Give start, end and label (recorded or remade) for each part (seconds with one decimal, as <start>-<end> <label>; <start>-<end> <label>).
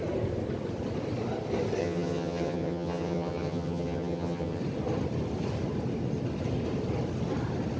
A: 0.0-1.8 recorded; 1.8-4.6 remade; 4.6-7.8 recorded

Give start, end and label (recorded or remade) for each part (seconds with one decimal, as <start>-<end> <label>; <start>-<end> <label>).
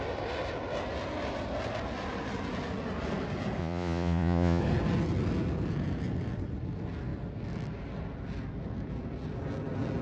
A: 0.0-3.6 recorded; 3.6-4.6 remade; 4.6-10.0 recorded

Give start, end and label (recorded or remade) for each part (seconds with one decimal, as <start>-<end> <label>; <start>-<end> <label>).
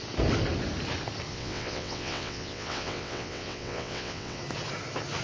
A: 0.0-1.3 recorded; 1.3-4.4 remade; 4.4-5.2 recorded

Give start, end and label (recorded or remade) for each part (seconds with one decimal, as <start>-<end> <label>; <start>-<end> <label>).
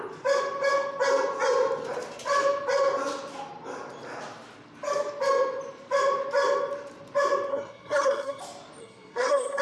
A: 0.0-7.5 recorded; 7.5-8.4 remade; 8.4-8.8 recorded; 8.8-9.6 remade